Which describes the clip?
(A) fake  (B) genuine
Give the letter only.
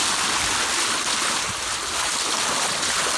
B